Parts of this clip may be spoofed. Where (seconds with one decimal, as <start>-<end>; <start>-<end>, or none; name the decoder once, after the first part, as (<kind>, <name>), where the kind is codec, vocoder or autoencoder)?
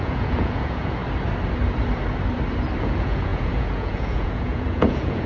0.0-1.0 (vocoder, Vocos); 2.8-5.3